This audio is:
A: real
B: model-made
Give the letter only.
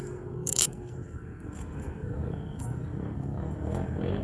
B